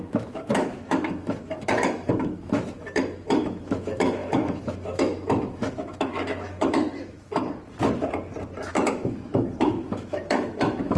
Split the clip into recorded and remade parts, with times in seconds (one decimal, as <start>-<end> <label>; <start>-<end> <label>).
0.0-7.4 remade; 7.4-8.7 recorded; 8.7-11.0 remade

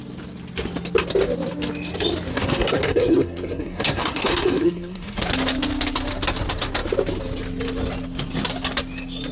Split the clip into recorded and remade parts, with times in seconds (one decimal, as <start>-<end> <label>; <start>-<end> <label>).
0.0-2.3 recorded; 2.3-5.2 remade; 5.2-9.3 recorded

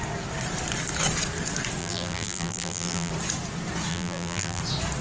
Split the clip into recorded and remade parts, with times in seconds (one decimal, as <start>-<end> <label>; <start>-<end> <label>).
0.0-1.8 recorded; 1.8-3.1 remade; 3.1-3.9 recorded; 3.9-4.6 remade; 4.6-5.0 recorded

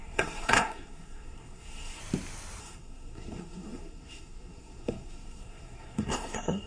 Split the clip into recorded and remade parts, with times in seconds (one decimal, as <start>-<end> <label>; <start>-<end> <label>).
0.0-2.0 remade; 2.0-2.6 recorded; 2.6-6.7 remade

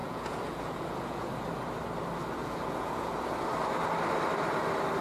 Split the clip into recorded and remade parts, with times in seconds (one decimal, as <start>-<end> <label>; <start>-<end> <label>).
0.0-1.3 remade; 1.3-2.4 recorded; 2.4-3.1 remade; 3.1-5.0 recorded

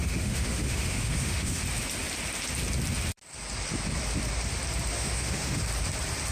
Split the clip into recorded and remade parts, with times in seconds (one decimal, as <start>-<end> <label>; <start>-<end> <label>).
0.0-1.6 remade; 1.6-4.9 recorded; 4.9-5.6 remade; 5.6-6.3 recorded